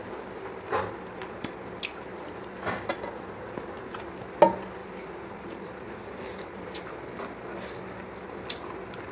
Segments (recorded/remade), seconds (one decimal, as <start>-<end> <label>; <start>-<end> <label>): 0.0-2.1 recorded; 2.1-3.6 remade; 3.6-4.8 recorded; 4.8-6.8 remade; 6.8-9.1 recorded